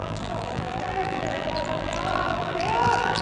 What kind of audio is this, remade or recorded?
remade